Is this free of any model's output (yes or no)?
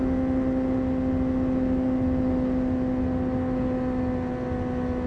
yes